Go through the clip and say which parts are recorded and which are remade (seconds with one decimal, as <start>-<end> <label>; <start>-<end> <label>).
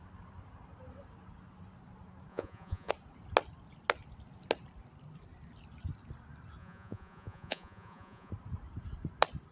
0.0-2.3 recorded; 2.3-2.9 remade; 2.9-6.6 recorded; 6.6-8.3 remade; 8.3-9.5 recorded